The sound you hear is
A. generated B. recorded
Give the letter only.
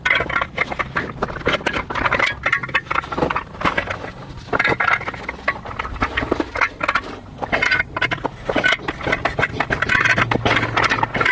B